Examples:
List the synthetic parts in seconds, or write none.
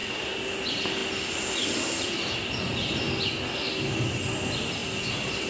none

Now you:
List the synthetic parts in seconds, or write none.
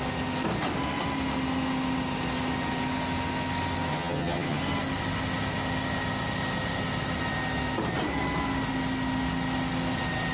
3.9-4.6 (vocoder, HiFi-GAN)